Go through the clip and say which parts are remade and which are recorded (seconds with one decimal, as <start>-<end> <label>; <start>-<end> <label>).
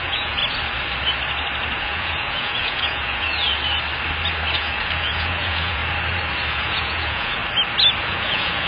0.0-0.4 remade; 0.4-1.8 recorded; 1.8-3.4 remade; 3.4-4.6 recorded; 4.6-5.8 remade; 5.8-6.5 recorded; 6.5-7.4 remade; 7.4-8.0 recorded; 8.0-8.7 remade